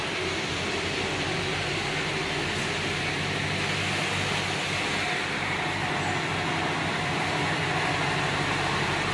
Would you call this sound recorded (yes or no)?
yes